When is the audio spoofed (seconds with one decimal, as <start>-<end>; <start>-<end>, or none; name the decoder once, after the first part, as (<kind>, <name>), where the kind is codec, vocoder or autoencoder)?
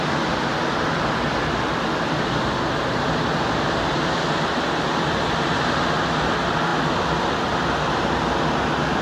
none